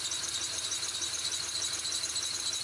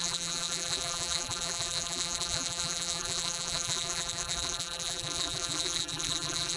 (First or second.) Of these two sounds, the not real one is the second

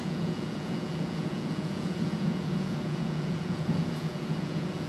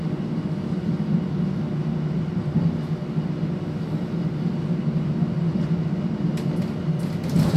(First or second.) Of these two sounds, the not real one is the first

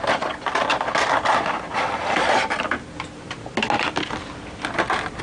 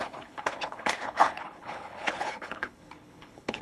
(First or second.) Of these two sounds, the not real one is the second